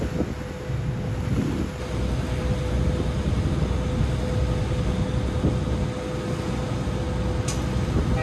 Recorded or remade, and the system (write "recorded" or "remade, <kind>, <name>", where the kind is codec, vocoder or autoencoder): recorded